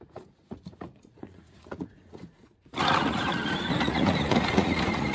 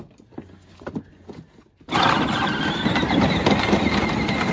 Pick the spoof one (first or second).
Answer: first